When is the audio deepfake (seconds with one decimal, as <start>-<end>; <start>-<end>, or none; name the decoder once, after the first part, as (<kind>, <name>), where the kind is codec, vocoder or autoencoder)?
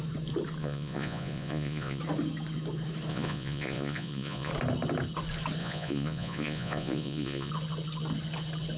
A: 0.6-2.0 (vocoder, Vocos); 3.1-4.5; 5.6-7.5